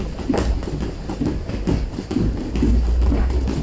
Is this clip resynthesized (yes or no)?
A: no